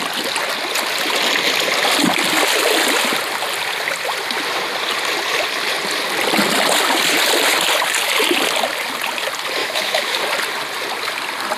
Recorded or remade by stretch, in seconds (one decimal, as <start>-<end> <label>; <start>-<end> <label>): 0.0-9.6 recorded; 9.6-10.2 remade; 10.2-11.6 recorded